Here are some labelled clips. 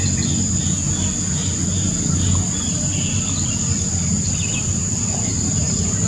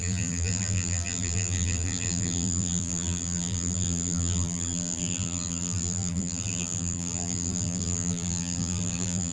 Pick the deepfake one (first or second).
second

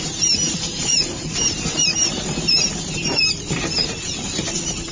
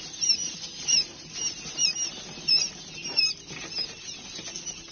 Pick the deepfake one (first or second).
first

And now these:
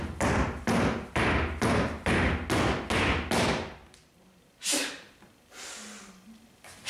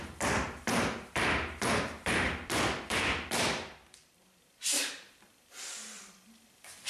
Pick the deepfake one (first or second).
second